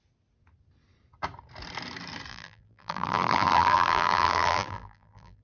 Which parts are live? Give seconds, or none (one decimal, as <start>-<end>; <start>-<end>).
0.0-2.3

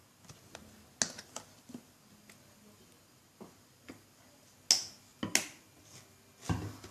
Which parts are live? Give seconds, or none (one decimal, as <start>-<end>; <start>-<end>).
0.0-6.9

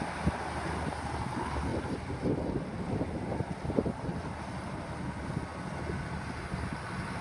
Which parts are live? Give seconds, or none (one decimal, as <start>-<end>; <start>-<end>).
0.0-1.7; 5.1-7.2